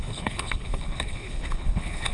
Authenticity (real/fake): fake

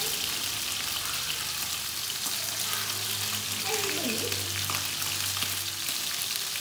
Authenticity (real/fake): real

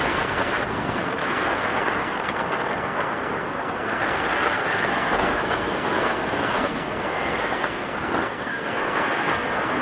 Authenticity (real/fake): fake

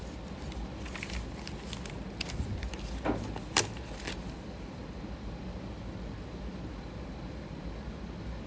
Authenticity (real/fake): real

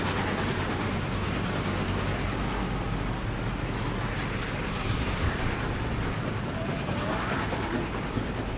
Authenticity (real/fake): real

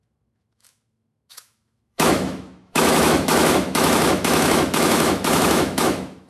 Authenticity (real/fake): fake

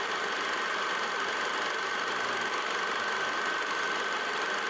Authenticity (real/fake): real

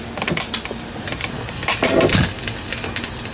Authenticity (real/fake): real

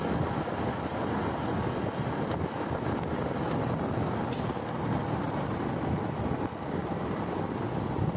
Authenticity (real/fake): real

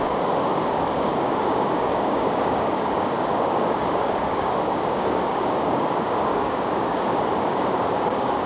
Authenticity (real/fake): fake